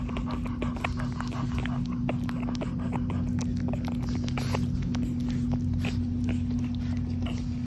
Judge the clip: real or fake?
real